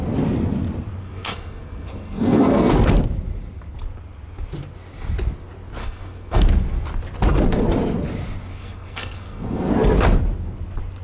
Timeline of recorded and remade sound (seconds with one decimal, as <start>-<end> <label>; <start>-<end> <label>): 0.0-1.0 recorded; 1.0-2.8 remade; 2.8-5.8 recorded; 5.8-6.4 remade; 6.4-8.5 recorded; 8.5-9.7 remade; 9.7-11.0 recorded